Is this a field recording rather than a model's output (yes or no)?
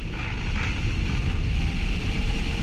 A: yes